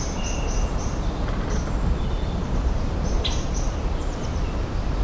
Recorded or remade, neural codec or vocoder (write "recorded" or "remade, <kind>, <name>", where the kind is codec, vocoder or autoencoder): recorded